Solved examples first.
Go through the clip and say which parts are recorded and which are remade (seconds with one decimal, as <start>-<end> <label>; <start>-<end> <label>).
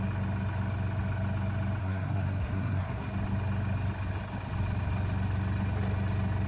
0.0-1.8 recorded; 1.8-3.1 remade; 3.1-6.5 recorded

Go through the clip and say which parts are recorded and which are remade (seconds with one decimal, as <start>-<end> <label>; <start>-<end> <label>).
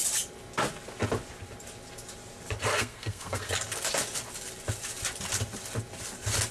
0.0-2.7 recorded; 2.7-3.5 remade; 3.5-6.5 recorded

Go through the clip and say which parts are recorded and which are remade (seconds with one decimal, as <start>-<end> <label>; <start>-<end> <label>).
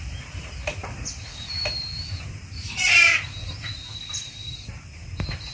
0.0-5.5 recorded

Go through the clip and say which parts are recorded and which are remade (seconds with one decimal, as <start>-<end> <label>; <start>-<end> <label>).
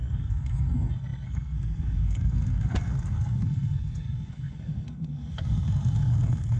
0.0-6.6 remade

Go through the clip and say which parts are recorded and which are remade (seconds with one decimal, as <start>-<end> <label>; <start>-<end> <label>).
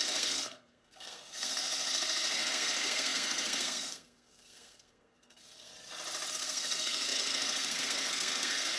0.0-5.7 remade; 5.7-6.3 recorded; 6.3-8.8 remade